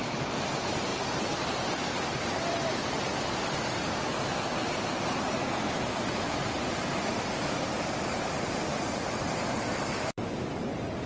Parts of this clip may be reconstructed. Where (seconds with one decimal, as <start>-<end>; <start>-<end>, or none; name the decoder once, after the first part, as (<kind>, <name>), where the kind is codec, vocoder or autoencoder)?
0.0-0.9 (vocoder, BigVGAN v2); 5.7-11.1